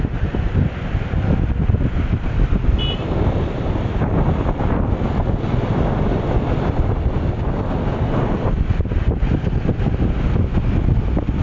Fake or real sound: real